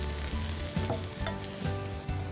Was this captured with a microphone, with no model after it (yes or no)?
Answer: yes